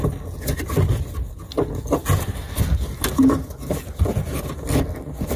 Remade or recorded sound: recorded